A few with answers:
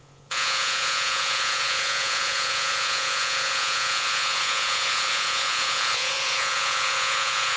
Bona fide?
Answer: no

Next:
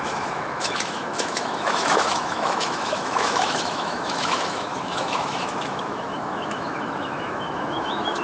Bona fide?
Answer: no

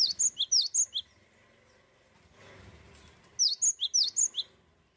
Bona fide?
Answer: yes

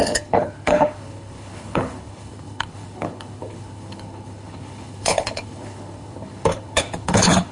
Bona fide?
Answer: no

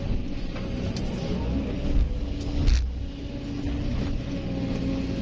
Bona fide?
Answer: yes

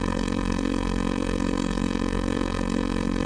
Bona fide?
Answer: no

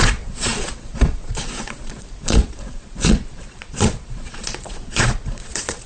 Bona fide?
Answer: no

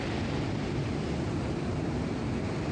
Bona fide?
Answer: yes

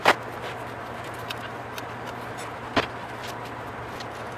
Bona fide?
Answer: yes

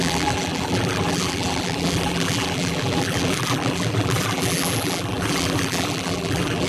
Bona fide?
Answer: no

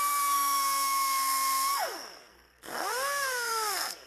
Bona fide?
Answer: no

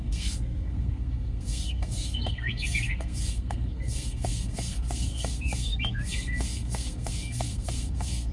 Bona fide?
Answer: no